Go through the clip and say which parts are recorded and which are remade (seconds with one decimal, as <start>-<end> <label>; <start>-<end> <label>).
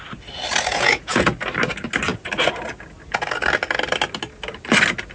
0.0-0.7 recorded; 0.7-1.3 remade; 1.3-5.1 recorded